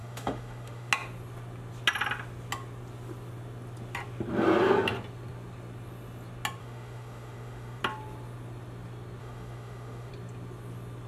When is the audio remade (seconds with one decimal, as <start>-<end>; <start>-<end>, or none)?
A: 0.0-0.9; 6.6-7.8; 9.2-10.1